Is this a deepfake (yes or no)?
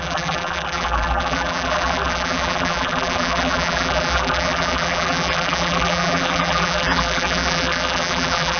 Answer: yes